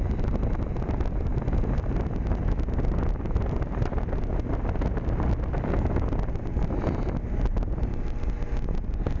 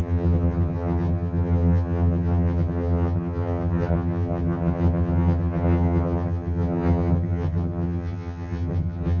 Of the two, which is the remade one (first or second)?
second